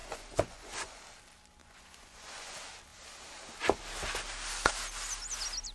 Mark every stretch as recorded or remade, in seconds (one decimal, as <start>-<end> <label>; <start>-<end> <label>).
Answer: 0.0-1.0 remade; 1.0-1.6 recorded; 1.6-2.5 remade; 2.5-5.7 recorded